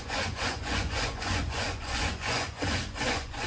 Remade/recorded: remade